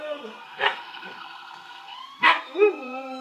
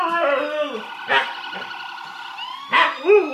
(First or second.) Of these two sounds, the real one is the second